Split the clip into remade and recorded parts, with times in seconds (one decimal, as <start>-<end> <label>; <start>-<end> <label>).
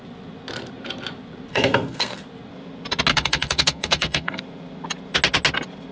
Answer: 0.0-1.5 recorded; 1.5-2.2 remade; 2.2-3.1 recorded; 3.1-4.4 remade; 4.4-5.9 recorded